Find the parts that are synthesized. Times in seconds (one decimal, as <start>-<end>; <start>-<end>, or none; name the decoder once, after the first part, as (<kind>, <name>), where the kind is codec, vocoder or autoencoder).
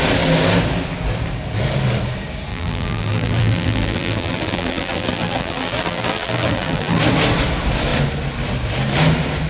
2.5-7.0 (vocoder, BigVGAN v2)